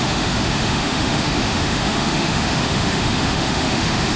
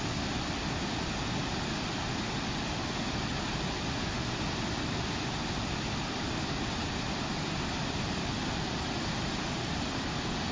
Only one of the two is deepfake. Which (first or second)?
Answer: first